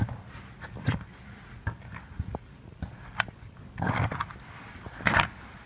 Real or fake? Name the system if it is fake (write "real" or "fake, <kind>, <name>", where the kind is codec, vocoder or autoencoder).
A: real